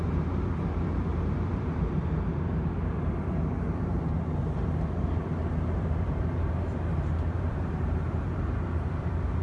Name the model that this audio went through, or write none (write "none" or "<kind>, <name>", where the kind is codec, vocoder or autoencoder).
vocoder, BigVGAN v2